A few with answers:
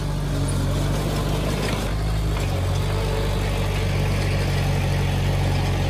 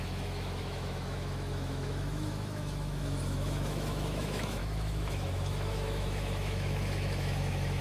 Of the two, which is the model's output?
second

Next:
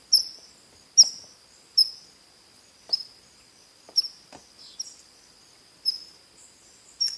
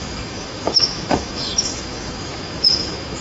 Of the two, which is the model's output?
second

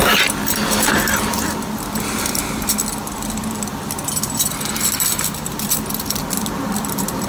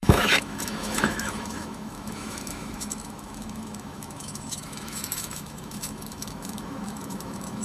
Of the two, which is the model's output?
second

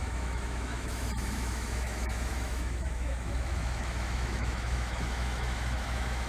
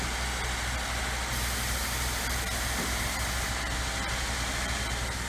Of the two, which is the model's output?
first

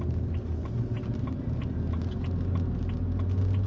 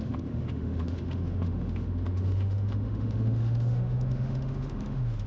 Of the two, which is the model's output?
second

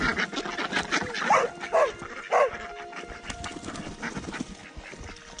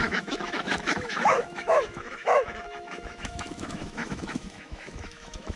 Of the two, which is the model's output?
second